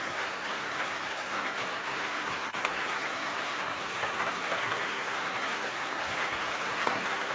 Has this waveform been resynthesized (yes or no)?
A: yes